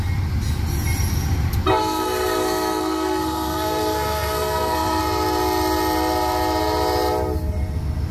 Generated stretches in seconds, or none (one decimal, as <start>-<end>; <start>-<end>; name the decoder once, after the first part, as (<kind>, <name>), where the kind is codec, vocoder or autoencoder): 1.8-5.0 (codec, SNAC)